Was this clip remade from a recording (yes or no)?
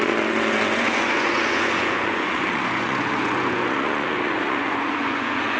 yes